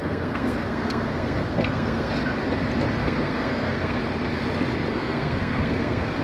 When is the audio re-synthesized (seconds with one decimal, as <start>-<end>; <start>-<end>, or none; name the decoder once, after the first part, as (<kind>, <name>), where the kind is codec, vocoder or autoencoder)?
0.0-2.1 (codec, SNAC); 3.0-4.0; 4.9-6.2